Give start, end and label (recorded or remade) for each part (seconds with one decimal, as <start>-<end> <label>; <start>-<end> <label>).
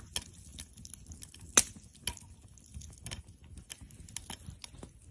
0.0-5.1 recorded